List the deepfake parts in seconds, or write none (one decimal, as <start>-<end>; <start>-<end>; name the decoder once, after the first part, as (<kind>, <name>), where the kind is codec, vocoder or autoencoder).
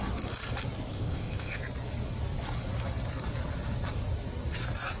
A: 0.9-1.6 (codec, ZipCodec)